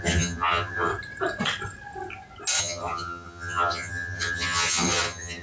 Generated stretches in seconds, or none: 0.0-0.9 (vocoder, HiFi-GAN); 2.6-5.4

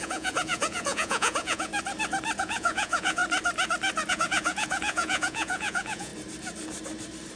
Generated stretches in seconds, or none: 0.0-1.7 (vocoder, Vocos); 2.4-3.2; 4.1-6.1

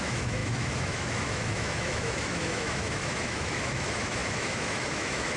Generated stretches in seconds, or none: 0.0-5.4 (autoencoder, DAC-VAE)

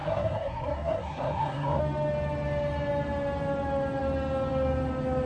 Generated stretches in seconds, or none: 0.0-1.8 (codec, SNAC)

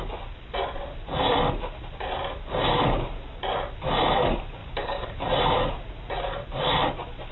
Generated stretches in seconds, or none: 4.6-5.4 (vocoder, BigVGAN v2)

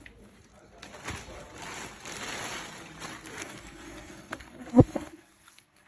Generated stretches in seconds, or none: 3.4-5.9 (codec, SNAC)

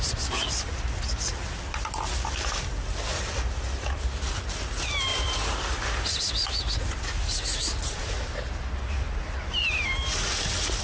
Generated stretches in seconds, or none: 5.1-6.2 (vocoder, BigVGAN v2)

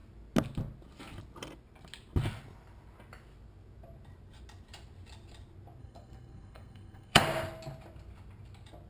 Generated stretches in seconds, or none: 5.8-7.2 (codec, SNAC)